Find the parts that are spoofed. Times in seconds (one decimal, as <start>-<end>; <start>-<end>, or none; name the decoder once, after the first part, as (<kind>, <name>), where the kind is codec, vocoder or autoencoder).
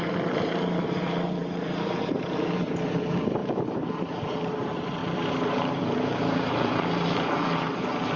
0.0-8.2 (vocoder, BigVGAN v2)